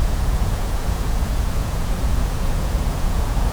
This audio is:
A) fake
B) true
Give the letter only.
A